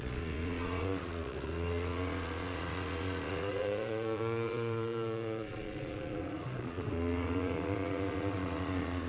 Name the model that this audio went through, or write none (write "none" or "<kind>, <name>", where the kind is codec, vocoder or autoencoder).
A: vocoder, Vocos